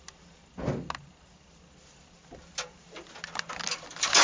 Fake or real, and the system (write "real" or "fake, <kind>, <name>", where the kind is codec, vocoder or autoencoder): real